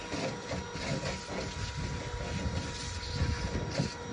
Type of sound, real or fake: real